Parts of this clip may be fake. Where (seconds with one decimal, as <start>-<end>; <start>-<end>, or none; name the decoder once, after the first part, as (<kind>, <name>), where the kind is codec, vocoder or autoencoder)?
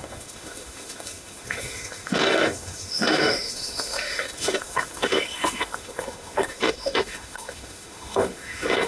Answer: 0.0-8.9 (autoencoder, DAC-VAE)